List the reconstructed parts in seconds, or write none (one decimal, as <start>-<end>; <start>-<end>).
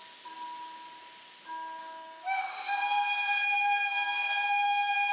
1.8-5.1